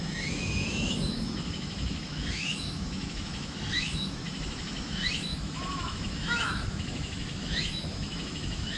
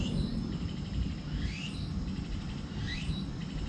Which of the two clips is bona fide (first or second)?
second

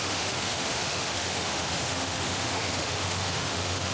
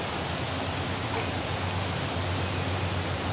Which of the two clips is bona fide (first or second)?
second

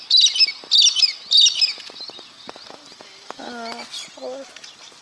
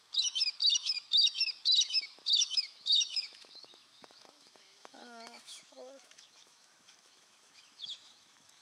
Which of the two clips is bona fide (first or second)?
first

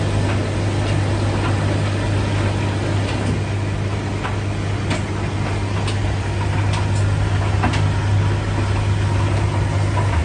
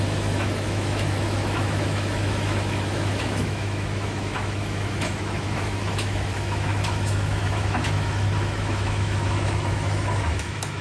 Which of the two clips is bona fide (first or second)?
first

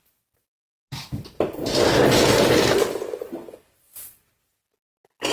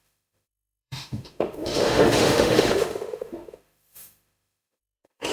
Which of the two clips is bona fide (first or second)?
first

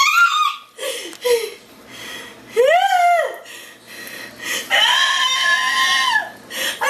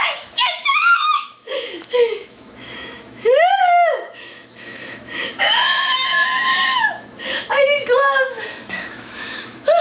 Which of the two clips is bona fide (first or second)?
first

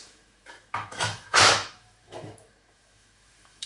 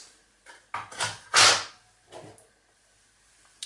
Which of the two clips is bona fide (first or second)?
second